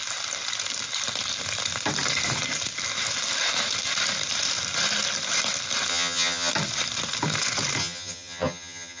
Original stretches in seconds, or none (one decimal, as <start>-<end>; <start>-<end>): 0.0-5.9; 6.5-7.8